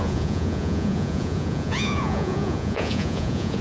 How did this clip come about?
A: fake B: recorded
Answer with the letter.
A